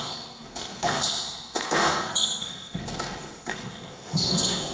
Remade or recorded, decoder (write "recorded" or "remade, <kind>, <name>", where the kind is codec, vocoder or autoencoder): remade, codec, SNAC